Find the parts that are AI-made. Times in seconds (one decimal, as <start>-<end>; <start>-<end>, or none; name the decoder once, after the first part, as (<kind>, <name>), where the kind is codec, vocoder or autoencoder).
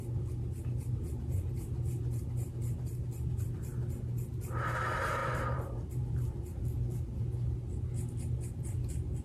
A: 5.2-6.6 (vocoder, BigVGAN v2)